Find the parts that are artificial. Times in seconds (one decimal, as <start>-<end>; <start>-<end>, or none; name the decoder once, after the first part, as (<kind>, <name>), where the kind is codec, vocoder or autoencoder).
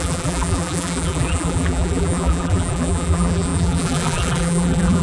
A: 0.0-5.0 (vocoder, BigVGAN v2)